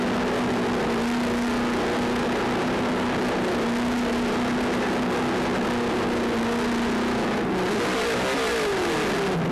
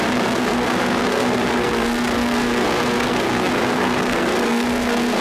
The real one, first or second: first